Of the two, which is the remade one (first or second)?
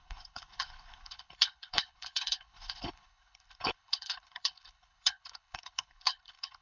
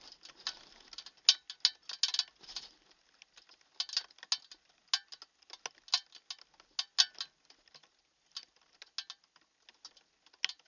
first